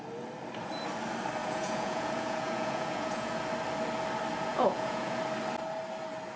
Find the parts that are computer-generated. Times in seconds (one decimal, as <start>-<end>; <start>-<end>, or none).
1.4-3.3; 4.5-5.2